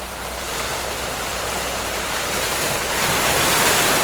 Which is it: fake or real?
fake